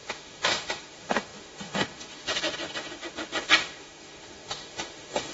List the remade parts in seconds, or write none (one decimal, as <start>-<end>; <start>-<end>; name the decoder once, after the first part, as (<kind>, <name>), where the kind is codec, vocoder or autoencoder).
0.0-5.3 (autoencoder, DAC-VAE)